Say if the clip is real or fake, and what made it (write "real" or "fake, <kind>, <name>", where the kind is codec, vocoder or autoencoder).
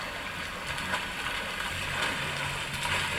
real